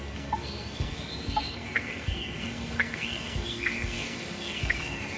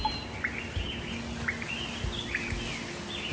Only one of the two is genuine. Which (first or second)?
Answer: second